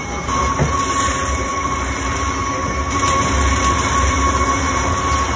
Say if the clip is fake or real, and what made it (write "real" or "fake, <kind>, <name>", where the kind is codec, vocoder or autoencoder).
fake, vocoder, BigVGAN v2